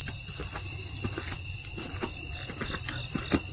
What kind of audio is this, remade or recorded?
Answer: recorded